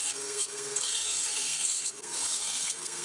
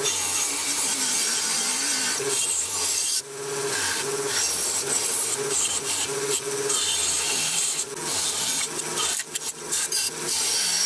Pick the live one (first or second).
second